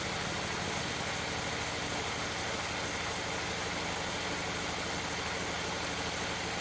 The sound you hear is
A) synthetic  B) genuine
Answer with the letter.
B